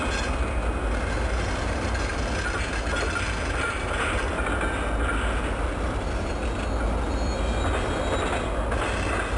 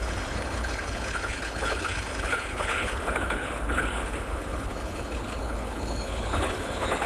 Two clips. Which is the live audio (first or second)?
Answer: first